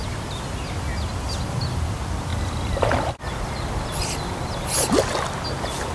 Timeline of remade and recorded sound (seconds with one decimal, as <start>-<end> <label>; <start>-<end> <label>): 0.0-5.9 recorded